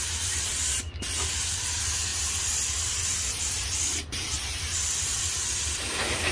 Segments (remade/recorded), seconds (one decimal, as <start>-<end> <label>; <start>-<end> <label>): 0.0-6.3 recorded